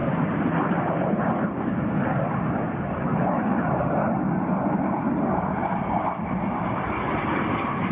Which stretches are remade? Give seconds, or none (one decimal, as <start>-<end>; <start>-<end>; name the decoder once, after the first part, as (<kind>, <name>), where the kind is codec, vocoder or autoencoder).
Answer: 0.0-7.9 (vocoder, BigVGAN v2)